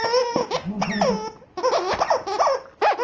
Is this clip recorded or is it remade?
recorded